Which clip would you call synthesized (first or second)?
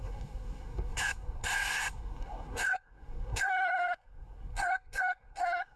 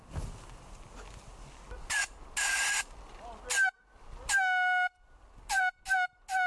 first